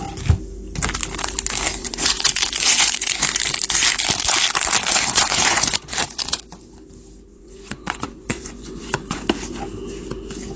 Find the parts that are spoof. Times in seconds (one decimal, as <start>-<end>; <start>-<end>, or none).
1.8-3.4; 4.8-6.6; 7.3-9.2

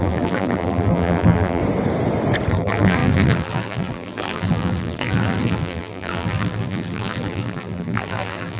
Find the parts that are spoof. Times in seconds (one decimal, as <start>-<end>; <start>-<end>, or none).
0.0-1.6; 2.5-8.6

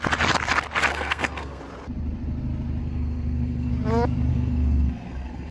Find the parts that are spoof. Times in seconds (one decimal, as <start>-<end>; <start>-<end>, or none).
0.9-1.6; 2.8-3.7; 4.3-5.5

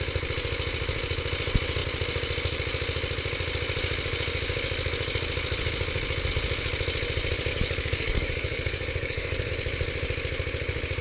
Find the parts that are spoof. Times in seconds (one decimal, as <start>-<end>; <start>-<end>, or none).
7.5-9.5

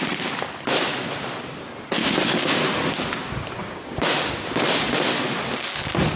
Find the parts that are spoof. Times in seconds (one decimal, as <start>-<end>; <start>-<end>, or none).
2.0-2.6; 3.6-4.6